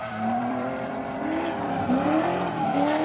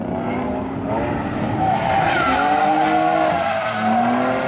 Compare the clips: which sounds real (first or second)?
second